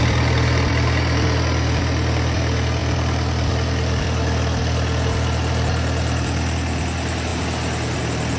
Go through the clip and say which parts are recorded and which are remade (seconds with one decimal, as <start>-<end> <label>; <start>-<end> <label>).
0.0-8.4 recorded